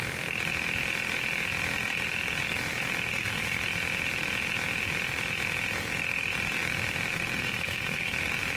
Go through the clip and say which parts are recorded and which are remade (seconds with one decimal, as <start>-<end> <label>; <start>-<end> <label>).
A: 0.0-3.1 recorded; 3.1-3.6 remade; 3.6-7.4 recorded; 7.4-8.1 remade; 8.1-8.6 recorded